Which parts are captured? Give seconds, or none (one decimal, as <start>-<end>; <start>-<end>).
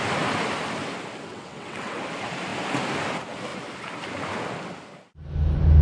0.0-1.3; 2.0-5.8